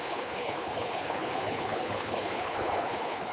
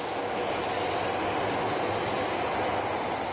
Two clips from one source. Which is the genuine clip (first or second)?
second